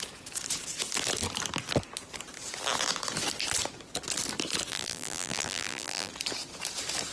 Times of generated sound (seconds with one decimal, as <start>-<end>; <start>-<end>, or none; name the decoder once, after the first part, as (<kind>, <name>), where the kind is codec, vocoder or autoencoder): 4.7-6.1 (vocoder, BigVGAN v2)